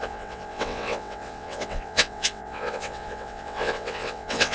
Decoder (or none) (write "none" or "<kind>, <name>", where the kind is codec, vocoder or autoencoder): vocoder, WaveNeXt